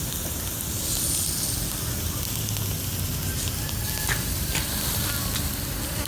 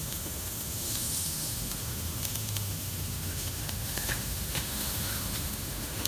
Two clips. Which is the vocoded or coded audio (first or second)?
second